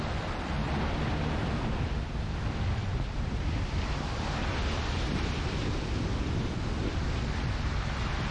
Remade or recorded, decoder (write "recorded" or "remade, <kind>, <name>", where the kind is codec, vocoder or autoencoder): remade, vocoder, BigVGAN v2